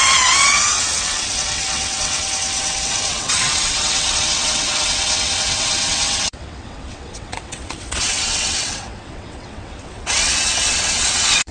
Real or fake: fake